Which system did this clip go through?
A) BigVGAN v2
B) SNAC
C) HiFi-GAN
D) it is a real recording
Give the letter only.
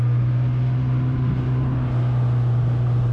D